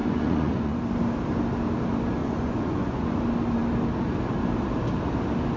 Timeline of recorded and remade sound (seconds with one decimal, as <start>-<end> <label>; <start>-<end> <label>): 0.0-0.8 remade; 0.8-2.2 recorded; 2.2-3.2 remade; 3.2-5.6 recorded